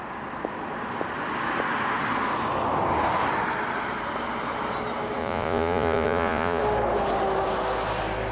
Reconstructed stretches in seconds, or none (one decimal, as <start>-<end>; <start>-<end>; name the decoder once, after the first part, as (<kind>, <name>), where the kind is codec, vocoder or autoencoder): 5.2-6.6 (vocoder, Vocos)